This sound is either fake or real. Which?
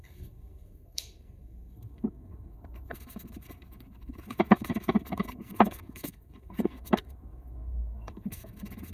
fake